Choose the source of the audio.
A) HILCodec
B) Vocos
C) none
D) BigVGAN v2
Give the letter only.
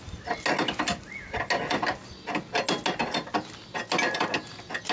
C